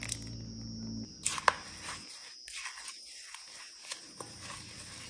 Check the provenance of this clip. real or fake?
real